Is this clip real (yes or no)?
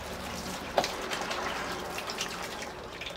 no